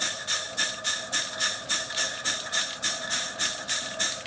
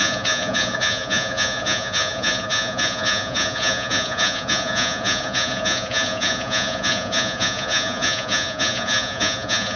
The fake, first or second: second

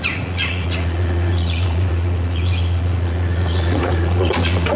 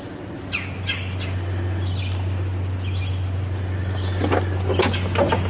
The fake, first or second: first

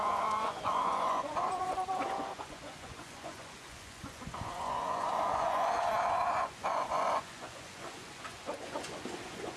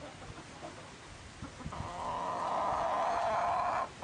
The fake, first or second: first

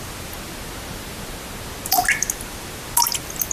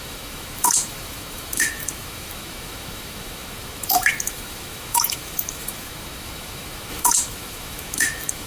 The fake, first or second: second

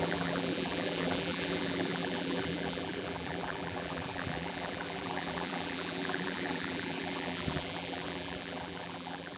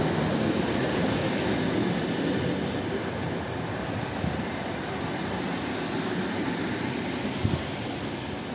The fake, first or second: first